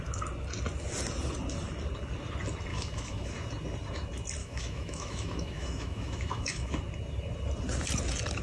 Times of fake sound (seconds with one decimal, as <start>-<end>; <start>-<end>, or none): 2.7-3.3; 4.4-6.8